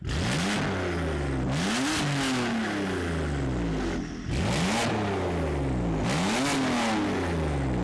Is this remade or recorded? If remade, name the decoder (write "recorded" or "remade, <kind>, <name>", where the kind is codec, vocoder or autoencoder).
recorded